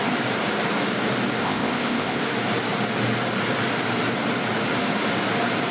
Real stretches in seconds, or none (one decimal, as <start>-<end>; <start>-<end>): 0.0-1.4; 2.2-5.7